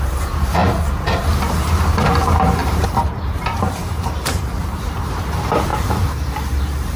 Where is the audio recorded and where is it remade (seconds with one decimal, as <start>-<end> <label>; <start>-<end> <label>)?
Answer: 0.0-7.0 remade